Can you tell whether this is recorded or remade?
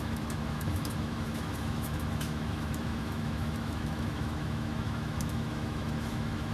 remade